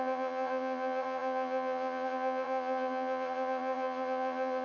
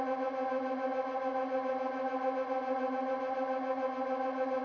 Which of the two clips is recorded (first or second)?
second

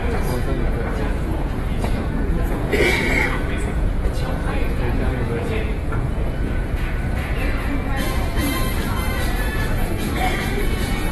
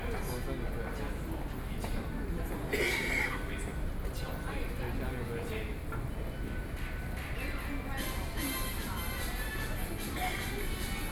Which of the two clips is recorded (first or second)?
second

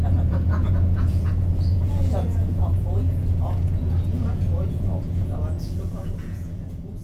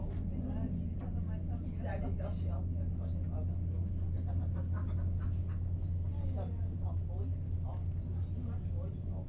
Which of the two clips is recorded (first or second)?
second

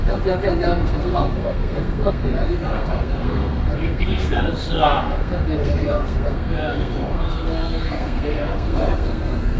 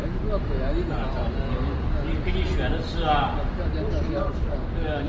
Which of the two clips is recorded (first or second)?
second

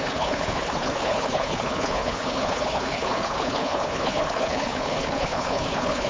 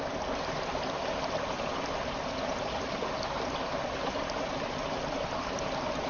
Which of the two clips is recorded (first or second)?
second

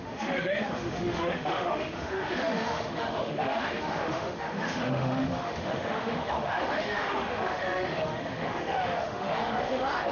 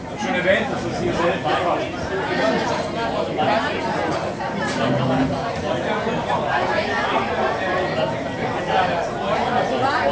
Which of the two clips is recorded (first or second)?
second